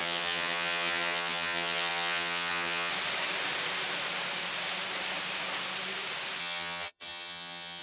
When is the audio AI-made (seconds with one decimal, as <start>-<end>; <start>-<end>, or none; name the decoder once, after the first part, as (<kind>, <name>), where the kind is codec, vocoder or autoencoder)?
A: 0.0-2.9 (vocoder, HiFi-GAN); 6.4-7.8

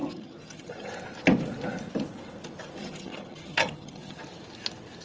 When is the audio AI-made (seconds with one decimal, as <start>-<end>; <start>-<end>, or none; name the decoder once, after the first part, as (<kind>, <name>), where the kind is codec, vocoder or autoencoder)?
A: 0.0-0.9 (vocoder, HiFi-GAN); 2.8-4.2

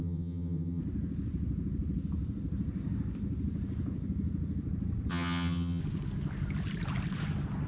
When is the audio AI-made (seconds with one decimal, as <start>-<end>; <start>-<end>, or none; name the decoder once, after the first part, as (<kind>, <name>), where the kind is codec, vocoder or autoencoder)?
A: 0.0-0.8 (vocoder, HiFi-GAN); 5.1-5.8